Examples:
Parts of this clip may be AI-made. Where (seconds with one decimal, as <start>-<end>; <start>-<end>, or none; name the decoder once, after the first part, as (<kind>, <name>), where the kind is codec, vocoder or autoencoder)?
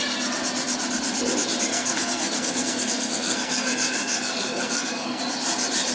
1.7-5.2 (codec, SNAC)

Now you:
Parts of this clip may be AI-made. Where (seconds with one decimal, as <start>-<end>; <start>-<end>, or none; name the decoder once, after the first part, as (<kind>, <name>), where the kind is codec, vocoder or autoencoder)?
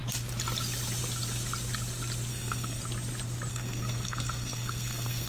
2.3-2.8 (codec, SNAC); 3.5-5.3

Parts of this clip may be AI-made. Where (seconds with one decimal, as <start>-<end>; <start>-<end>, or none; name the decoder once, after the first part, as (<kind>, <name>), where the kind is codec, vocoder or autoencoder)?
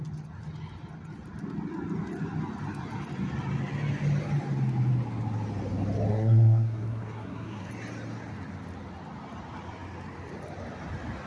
6.1-7.7 (codec, SNAC)